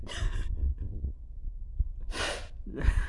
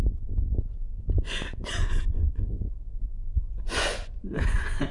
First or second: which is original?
first